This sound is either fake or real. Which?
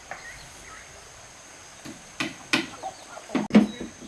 real